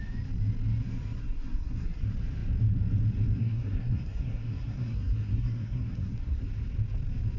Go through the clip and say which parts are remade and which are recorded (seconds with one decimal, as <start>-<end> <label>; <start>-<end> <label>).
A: 0.0-1.2 recorded; 1.2-2.0 remade; 2.0-3.4 recorded; 3.4-6.4 remade; 6.4-7.4 recorded